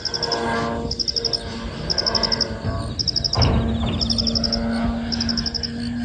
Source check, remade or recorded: recorded